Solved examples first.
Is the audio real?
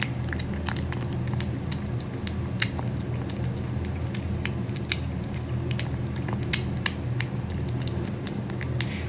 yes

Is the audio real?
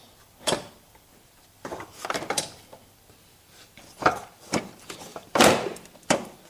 no